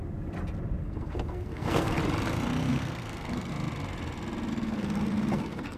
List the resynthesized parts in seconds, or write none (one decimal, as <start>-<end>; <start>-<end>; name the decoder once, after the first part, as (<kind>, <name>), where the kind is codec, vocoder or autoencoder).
0.8-2.0 (codec, SNAC); 2.7-3.5; 4.5-5.8